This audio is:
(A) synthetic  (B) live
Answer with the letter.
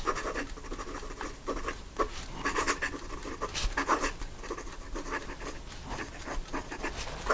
B